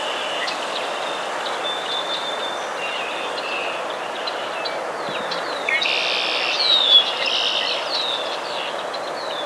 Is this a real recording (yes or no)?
yes